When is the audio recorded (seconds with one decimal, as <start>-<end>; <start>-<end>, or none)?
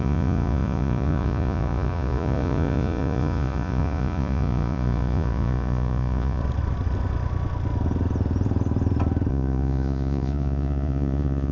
6.4-9.3